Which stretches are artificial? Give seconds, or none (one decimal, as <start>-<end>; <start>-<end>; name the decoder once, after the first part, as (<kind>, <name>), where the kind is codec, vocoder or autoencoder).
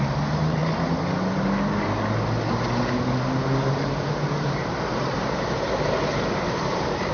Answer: 0.0-0.6 (vocoder, BigVGAN v2); 3.7-7.1